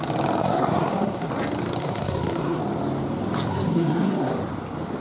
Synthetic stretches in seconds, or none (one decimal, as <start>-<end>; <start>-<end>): 0.4-1.3; 1.8-2.6; 3.5-4.3